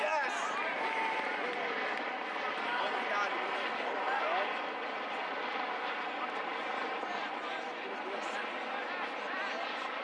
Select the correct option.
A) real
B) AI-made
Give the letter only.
A